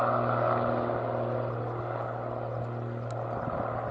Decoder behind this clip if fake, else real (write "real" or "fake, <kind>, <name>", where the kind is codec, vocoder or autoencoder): real